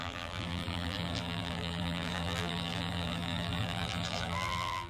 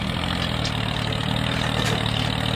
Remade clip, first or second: first